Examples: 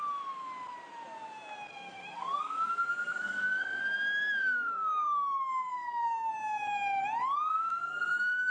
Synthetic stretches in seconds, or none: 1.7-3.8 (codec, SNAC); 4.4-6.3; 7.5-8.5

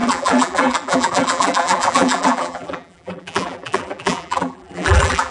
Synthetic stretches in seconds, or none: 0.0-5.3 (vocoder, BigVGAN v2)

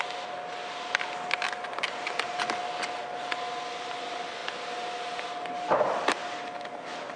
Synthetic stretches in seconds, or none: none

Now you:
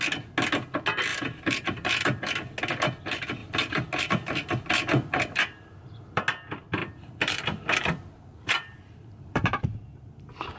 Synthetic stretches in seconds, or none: 1.1-2.2 (vocoder, BigVGAN v2); 3.4-4.1; 4.9-6.2; 6.8-10.6